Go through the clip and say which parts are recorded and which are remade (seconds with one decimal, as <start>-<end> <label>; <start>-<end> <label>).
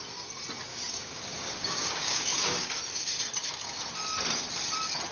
0.0-0.7 recorded; 0.7-2.8 remade; 2.8-5.1 recorded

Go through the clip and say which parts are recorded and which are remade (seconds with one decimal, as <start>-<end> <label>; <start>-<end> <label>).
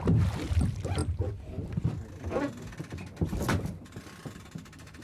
0.0-5.0 recorded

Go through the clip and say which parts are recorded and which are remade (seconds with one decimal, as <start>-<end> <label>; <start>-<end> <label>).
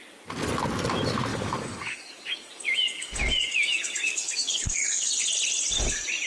0.0-1.3 recorded; 1.3-5.1 remade; 5.1-6.3 recorded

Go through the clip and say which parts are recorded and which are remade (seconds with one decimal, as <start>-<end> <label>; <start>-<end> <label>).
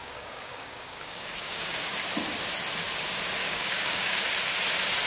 0.0-1.9 remade; 1.9-3.4 recorded; 3.4-4.2 remade; 4.2-5.1 recorded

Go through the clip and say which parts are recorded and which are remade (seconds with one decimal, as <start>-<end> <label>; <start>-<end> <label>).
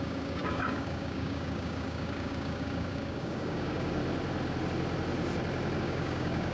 0.0-4.0 remade; 4.0-5.8 recorded; 5.8-6.5 remade